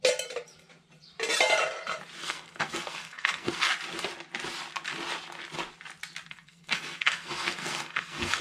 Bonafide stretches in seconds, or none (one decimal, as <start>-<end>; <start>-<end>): 0.0-2.2; 3.7-6.3